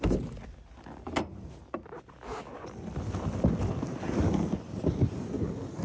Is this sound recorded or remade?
recorded